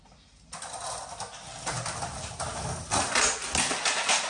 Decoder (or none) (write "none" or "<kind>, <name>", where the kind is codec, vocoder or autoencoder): none